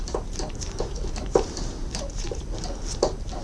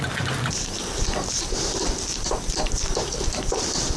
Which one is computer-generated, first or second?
second